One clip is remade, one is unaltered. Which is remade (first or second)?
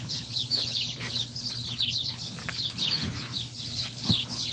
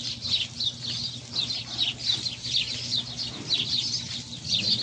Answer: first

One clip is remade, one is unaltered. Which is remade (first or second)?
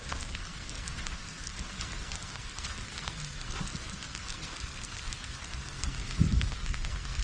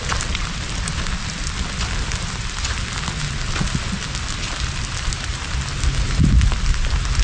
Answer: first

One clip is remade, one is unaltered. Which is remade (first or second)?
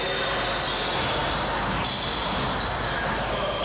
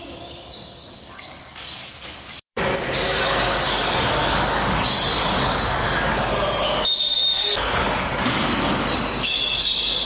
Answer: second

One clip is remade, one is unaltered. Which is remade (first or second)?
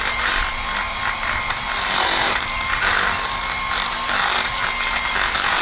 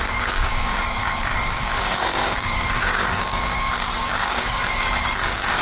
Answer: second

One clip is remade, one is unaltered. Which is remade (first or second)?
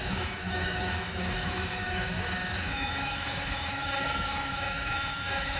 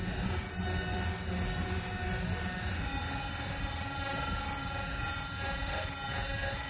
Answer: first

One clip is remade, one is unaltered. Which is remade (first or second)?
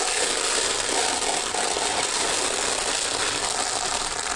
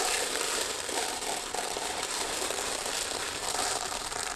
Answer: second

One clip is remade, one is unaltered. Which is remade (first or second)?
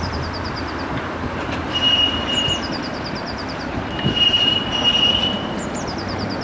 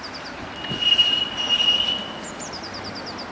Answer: first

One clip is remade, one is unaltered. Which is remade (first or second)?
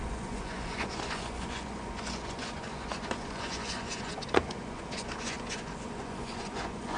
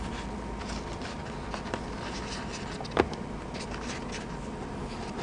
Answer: first